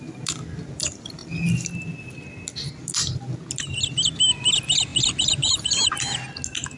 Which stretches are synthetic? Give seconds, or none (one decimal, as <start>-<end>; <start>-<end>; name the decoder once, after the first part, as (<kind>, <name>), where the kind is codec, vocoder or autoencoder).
none